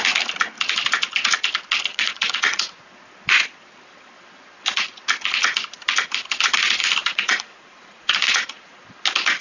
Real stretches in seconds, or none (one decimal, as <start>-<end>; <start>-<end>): 0.0-1.9; 2.8-7.0; 8.8-9.4

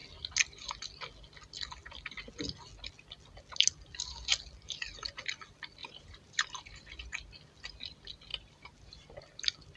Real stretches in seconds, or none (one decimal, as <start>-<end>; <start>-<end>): 0.0-5.8; 6.8-8.3; 9.2-9.8

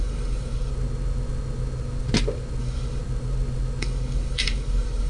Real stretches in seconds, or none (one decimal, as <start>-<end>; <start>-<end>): 0.7-2.6; 3.0-3.8

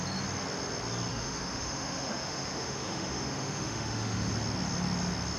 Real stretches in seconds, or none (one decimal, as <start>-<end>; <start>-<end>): 0.0-1.1; 4.3-5.4

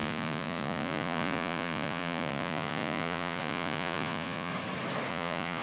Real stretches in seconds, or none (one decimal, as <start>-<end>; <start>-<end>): 4.5-5.1

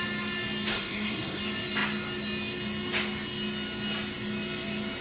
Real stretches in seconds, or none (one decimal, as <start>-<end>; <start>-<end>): 0.0-0.7; 1.4-5.0